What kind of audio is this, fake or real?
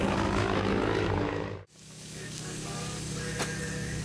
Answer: fake